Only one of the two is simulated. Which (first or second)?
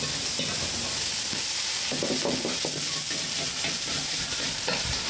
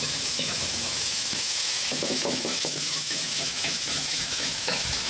second